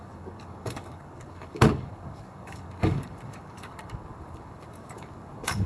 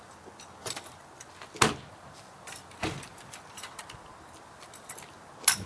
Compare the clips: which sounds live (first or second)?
second